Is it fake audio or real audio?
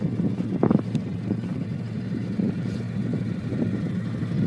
fake